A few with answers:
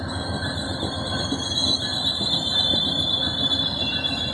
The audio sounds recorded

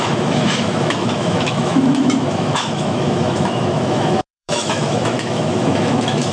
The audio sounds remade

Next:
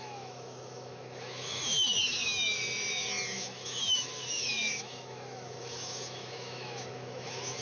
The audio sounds remade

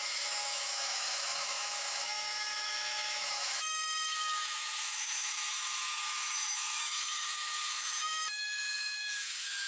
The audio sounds remade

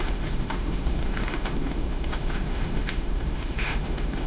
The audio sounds remade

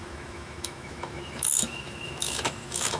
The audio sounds remade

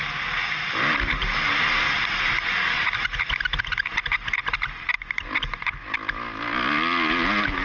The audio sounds recorded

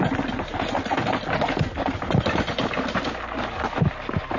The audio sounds recorded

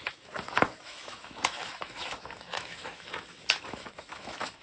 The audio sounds remade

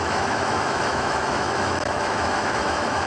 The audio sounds remade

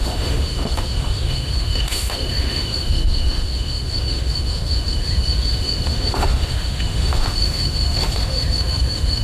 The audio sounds remade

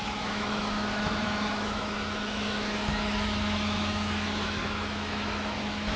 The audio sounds remade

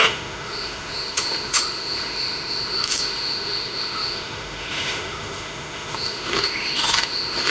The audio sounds remade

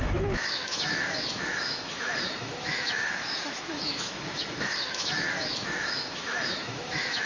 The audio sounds remade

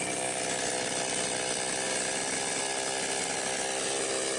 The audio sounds recorded